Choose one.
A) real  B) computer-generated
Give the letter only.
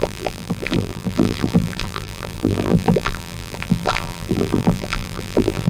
B